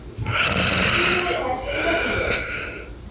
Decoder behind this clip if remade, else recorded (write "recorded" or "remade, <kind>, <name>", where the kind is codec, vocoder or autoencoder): recorded